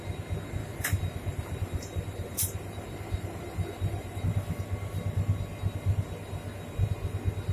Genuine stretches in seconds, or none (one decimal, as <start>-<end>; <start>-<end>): 0.0-0.6; 4.2-7.5